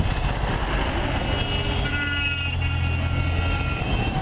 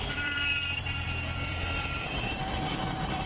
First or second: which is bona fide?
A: first